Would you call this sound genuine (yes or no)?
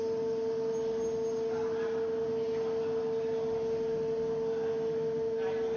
yes